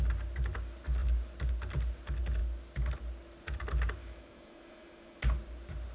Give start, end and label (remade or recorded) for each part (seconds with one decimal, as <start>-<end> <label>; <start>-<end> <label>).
0.0-4.0 recorded; 4.0-5.2 remade; 5.2-5.9 recorded